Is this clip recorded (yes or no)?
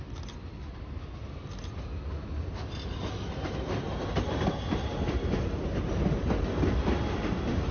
yes